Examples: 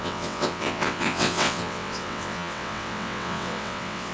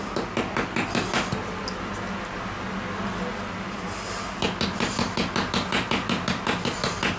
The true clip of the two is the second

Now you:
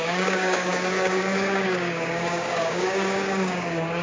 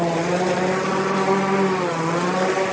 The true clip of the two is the second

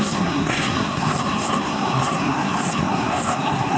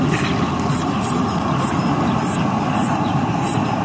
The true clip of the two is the second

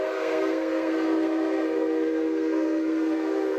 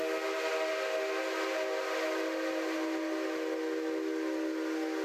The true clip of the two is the second